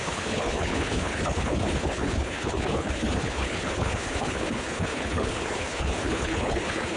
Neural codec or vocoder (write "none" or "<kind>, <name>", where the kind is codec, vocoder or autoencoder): codec, HILCodec